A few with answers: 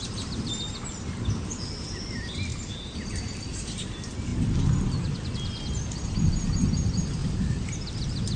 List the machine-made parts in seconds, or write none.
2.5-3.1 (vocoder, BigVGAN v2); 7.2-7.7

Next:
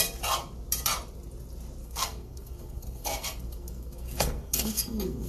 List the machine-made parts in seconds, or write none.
1.8-5.3 (codec, SNAC)